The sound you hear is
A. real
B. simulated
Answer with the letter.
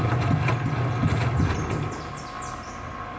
A